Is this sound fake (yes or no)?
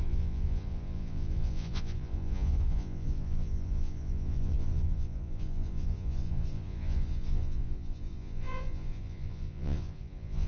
yes